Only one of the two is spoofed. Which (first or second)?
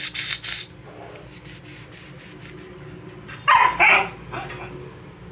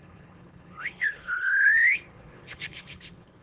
second